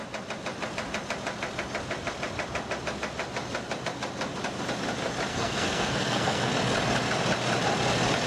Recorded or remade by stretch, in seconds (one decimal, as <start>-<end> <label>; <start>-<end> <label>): 0.0-5.3 recorded; 5.3-6.5 remade; 6.5-8.3 recorded